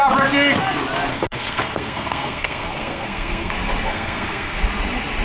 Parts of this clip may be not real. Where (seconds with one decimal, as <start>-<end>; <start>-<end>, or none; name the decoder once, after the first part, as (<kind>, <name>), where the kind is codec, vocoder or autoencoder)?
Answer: 1.1-3.5 (codec, SNAC); 3.9-4.6